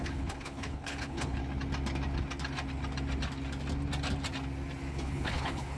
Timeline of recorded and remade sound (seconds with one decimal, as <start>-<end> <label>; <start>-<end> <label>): 0.0-1.4 remade; 1.4-4.9 recorded; 4.9-5.8 remade